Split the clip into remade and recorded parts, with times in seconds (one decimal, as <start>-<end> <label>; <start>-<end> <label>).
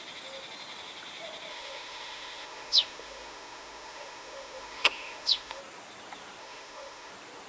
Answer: 0.0-1.5 recorded; 1.5-5.6 remade; 5.6-6.4 recorded; 6.4-7.1 remade; 7.1-7.5 recorded